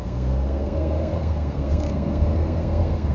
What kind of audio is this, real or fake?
fake